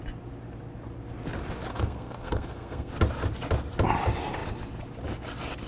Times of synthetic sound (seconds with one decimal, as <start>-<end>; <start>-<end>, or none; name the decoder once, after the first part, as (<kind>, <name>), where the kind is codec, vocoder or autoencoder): 1.7-2.9 (codec, SNAC)